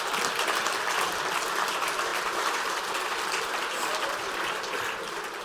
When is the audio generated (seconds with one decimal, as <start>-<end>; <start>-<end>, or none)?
none